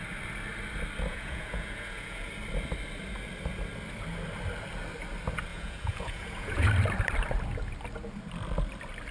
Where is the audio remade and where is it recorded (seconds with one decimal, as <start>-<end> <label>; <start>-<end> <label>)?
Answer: 0.0-1.1 recorded; 1.1-2.3 remade; 2.3-5.5 recorded; 5.5-6.7 remade; 6.7-9.1 recorded